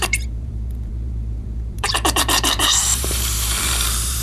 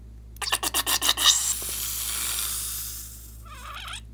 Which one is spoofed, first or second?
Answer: first